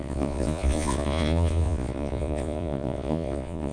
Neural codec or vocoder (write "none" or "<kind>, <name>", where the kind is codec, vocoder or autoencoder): vocoder, Vocos